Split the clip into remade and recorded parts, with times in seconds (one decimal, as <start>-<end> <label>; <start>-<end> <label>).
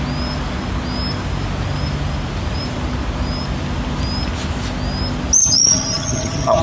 0.0-5.4 recorded; 5.4-6.6 remade